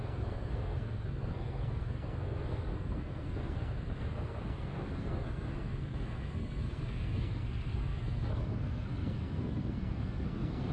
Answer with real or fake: fake